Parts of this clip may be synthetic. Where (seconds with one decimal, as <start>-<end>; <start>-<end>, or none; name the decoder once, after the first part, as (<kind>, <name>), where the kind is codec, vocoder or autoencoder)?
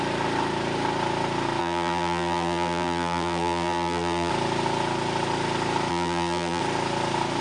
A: 1.6-4.3 (vocoder, BigVGAN v2); 5.9-6.6